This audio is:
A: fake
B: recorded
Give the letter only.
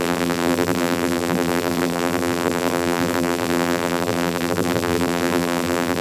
A